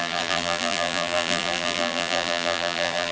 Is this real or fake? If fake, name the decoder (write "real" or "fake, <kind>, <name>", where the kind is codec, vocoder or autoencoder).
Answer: fake, vocoder, BigVGAN v2